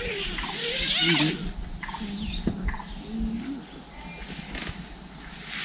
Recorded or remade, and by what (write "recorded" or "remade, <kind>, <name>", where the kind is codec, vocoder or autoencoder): recorded